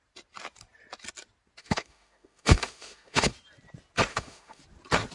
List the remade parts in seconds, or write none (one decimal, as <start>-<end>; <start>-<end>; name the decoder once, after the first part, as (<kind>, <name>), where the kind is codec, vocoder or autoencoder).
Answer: 1.6-3.3 (autoencoder, DAC-VAE); 4.1-4.6